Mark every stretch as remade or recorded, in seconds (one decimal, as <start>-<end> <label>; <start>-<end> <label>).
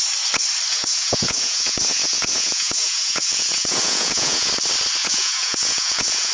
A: 0.0-0.7 recorded; 0.7-4.5 remade; 4.5-5.0 recorded; 5.0-6.3 remade